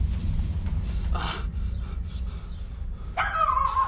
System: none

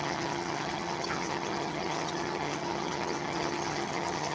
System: vocoder, HiFi-GAN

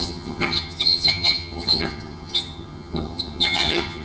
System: vocoder, HiFi-GAN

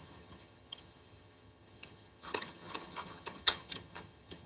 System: vocoder, HiFi-GAN